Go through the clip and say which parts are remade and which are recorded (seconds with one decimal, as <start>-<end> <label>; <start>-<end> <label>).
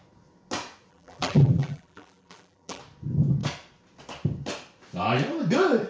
0.0-0.9 recorded; 0.9-2.8 remade; 2.8-5.9 recorded